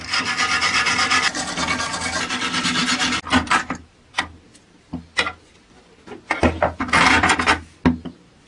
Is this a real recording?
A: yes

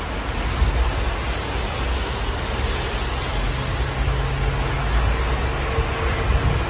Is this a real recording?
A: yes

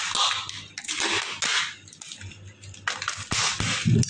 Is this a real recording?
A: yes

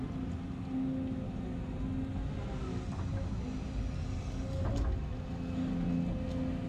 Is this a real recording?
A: yes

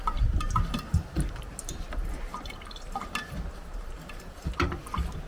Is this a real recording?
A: yes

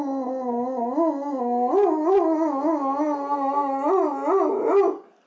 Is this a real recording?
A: yes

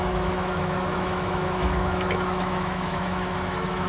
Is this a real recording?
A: no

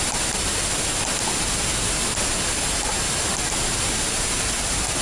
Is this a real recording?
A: yes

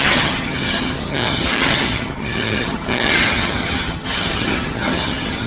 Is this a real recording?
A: no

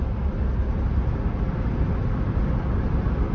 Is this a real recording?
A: yes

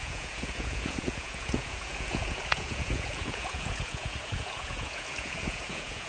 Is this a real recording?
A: no